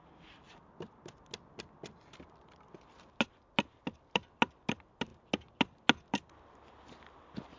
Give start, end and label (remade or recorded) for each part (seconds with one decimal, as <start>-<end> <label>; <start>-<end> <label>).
0.0-7.6 recorded